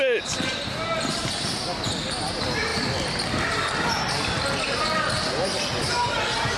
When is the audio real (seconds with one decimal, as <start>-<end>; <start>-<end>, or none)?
0.0-6.6